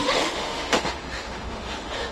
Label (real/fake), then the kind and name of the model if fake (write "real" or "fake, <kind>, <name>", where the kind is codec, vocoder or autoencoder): fake, autoencoder, DAC-VAE